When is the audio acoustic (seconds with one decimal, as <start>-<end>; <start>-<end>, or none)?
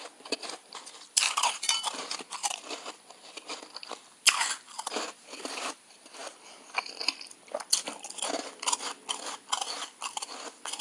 6.2-8.9